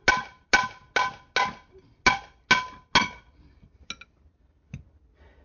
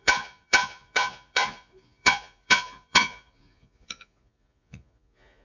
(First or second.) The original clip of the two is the first